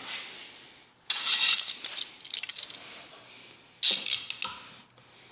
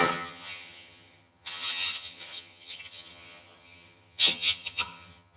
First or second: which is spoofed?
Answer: second